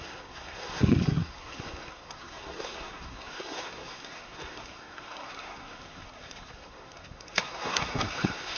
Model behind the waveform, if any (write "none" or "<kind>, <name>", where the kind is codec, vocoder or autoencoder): codec, SNAC